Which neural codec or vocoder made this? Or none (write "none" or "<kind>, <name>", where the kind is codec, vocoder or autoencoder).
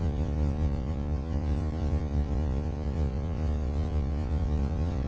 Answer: vocoder, Vocos